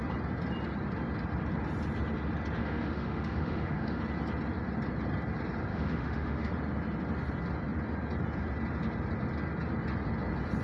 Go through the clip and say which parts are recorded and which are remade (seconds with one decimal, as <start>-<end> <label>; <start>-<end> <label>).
0.0-2.6 recorded; 2.6-4.0 remade; 4.0-5.7 recorded; 5.7-6.5 remade; 6.5-10.6 recorded